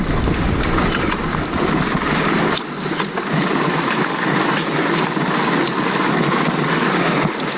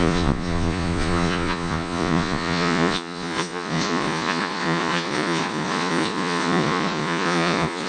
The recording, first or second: first